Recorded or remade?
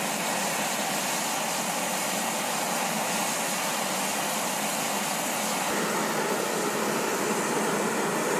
recorded